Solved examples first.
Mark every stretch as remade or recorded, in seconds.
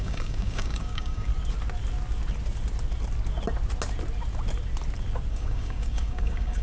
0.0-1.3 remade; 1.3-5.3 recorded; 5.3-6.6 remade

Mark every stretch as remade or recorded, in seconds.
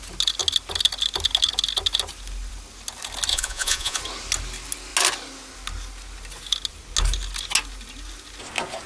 0.0-3.3 recorded; 3.3-4.0 remade; 4.0-8.9 recorded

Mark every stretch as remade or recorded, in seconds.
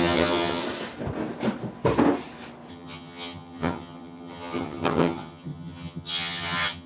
0.0-0.6 remade; 0.6-2.7 recorded; 2.7-6.9 remade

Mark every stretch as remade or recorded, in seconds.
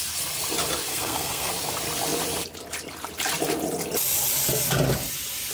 0.0-0.9 recorded; 0.9-1.5 remade; 1.5-5.5 recorded